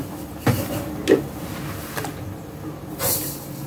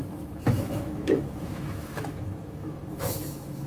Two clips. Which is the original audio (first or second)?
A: first